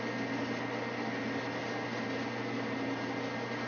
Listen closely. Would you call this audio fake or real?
real